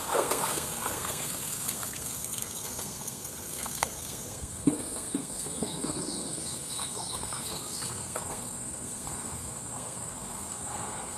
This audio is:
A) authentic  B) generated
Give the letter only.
B